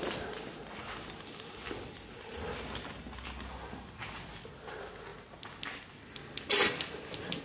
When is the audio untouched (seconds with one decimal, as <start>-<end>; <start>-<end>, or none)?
0.0-7.4